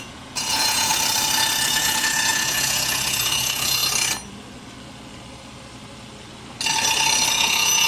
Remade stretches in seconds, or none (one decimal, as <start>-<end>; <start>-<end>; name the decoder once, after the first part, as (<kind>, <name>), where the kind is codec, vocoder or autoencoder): 0.0-0.9 (vocoder, Vocos); 1.7-3.8; 7.3-7.9